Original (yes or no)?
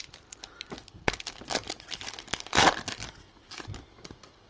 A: yes